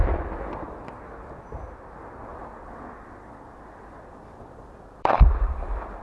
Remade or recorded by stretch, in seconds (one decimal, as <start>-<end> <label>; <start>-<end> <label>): 0.0-2.3 recorded; 2.3-6.0 remade